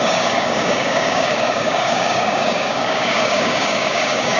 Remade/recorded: remade